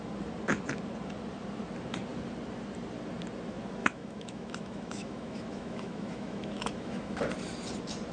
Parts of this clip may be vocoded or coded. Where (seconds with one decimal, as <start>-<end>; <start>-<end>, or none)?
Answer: 3.8-7.2